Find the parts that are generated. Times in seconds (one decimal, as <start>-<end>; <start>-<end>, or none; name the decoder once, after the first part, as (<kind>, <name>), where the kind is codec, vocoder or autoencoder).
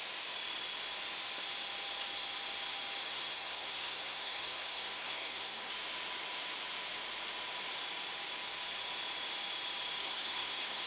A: 3.0-5.7 (codec, SNAC); 10.0-10.9